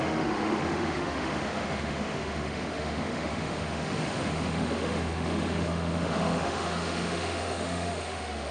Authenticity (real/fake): fake